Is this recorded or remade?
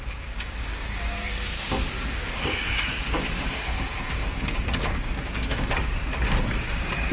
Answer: remade